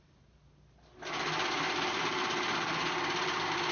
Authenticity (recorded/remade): recorded